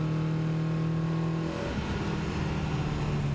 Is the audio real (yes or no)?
yes